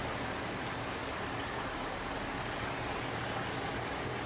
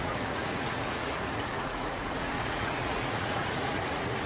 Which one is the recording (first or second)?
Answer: first